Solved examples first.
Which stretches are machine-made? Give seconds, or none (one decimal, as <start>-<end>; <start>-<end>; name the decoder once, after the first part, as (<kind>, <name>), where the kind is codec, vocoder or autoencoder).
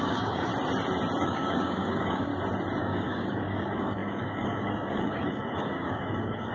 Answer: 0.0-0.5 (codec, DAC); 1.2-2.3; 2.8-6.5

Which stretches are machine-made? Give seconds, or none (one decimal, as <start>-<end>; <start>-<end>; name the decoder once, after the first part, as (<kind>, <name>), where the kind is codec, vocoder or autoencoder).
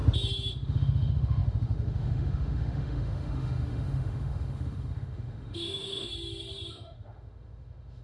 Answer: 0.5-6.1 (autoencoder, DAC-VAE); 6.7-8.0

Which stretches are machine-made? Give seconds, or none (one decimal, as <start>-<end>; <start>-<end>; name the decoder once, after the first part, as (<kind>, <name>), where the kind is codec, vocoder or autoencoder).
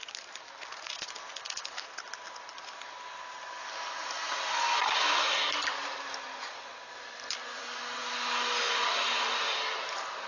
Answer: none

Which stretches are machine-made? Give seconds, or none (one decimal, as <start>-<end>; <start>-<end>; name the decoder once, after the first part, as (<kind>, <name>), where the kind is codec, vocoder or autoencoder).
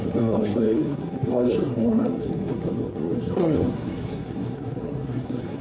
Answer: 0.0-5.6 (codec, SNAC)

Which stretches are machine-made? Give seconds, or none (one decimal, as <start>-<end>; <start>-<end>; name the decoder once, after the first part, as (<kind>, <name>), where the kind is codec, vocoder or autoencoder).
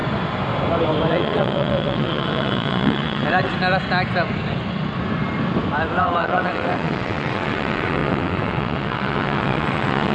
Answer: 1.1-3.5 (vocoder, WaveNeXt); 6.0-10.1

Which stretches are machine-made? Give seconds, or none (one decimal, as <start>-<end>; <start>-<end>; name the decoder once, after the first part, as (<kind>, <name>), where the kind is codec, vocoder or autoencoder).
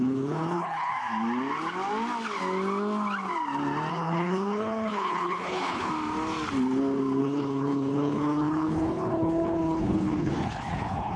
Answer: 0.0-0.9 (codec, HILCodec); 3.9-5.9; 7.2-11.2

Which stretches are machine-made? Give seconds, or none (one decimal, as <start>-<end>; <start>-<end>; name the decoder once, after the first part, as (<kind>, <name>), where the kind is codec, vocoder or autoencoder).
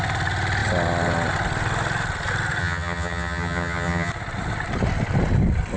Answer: 2.6-4.1 (vocoder, HiFi-GAN)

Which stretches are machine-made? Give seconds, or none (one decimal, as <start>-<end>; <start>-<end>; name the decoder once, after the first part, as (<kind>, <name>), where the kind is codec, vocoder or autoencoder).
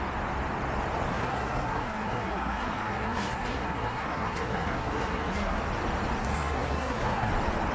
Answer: 1.1-5.6 (codec, SNAC); 6.2-7.3